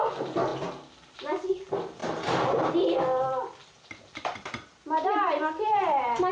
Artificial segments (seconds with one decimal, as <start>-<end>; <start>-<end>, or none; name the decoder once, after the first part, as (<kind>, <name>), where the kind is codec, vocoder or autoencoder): 3.6-6.3 (vocoder, BigVGAN v2)